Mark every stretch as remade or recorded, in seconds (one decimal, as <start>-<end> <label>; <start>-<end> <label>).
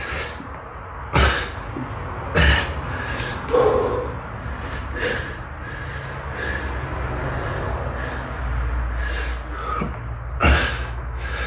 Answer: 0.0-10.4 recorded; 10.4-11.5 remade